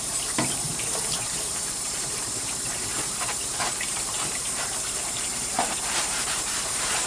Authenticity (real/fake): fake